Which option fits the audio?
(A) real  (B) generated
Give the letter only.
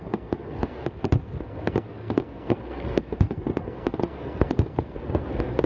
B